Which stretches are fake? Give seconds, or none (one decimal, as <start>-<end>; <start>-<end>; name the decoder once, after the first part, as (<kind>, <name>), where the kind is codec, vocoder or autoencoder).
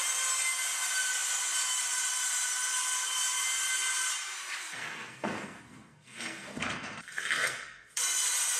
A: 4.6-8.0 (codec, SNAC)